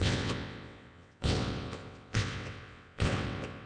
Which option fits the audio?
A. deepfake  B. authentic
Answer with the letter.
A